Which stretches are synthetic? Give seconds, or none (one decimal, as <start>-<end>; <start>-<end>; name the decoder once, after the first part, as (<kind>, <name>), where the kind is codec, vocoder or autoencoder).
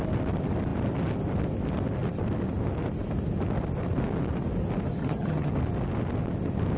5.0-5.5 (vocoder, HiFi-GAN)